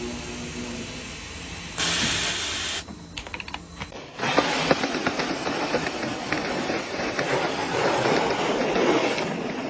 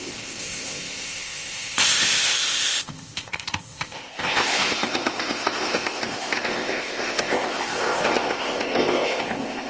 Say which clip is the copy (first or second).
second